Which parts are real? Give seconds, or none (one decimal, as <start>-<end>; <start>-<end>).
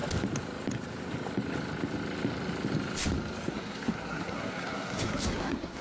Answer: 0.0-3.5